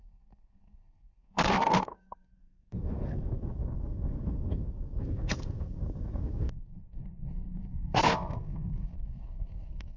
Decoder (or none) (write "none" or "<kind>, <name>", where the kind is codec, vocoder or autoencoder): codec, SNAC